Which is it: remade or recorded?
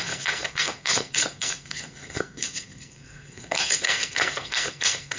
remade